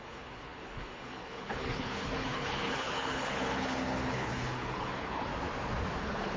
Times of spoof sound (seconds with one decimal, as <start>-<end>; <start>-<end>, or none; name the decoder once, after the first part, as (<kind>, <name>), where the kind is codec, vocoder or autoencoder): 0.0-5.3 (codec, HILCodec); 6.0-6.4